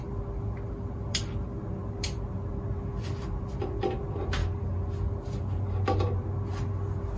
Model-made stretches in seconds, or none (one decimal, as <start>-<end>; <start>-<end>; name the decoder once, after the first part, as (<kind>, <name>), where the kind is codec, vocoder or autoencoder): none